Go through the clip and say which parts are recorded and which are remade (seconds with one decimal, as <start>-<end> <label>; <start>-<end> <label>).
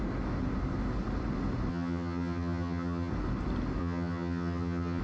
0.0-1.7 recorded; 1.7-3.1 remade; 3.1-3.8 recorded; 3.8-5.0 remade